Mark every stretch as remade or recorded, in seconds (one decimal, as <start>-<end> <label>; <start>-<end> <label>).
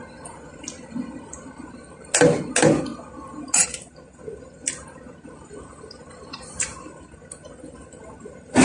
0.0-8.6 recorded